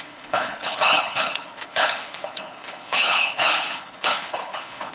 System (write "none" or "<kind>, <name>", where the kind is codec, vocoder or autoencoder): codec, HILCodec